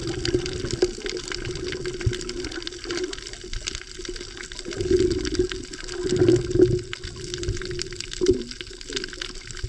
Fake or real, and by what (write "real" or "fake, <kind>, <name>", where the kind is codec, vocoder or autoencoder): real